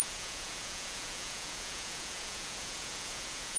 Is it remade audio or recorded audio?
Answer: remade